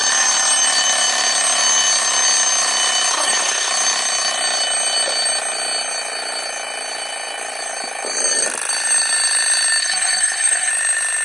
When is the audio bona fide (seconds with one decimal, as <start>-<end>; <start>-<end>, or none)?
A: 0.0-3.1; 3.7-9.8; 10.7-11.2